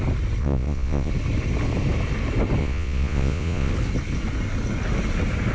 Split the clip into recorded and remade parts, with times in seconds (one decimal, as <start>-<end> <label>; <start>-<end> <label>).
0.0-0.4 recorded; 0.4-1.1 remade; 1.1-2.6 recorded; 2.6-3.7 remade; 3.7-5.5 recorded